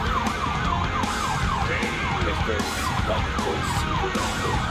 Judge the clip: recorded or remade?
recorded